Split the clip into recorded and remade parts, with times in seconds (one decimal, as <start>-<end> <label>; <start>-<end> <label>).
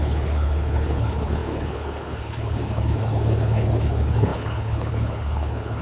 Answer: 0.0-5.8 remade